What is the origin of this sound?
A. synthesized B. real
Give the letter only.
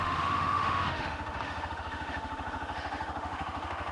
A